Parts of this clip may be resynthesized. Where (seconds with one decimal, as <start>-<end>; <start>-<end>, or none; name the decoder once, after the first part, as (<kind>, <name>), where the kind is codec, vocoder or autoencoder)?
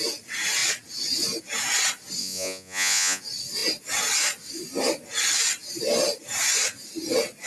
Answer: 2.2-3.2 (vocoder, Vocos)